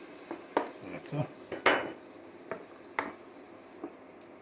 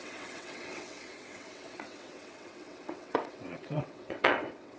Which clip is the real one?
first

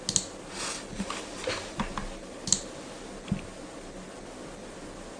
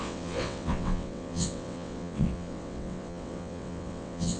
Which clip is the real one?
first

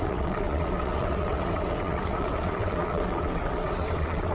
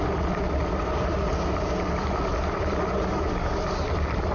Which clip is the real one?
second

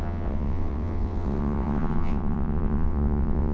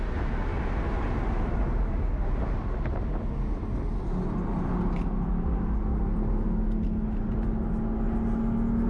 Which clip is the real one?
second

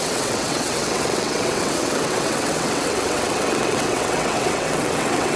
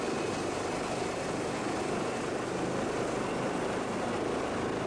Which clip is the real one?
second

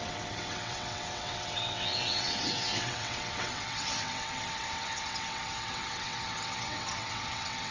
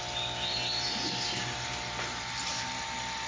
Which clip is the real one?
second